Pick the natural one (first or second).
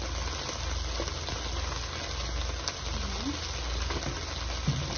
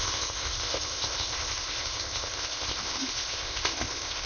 first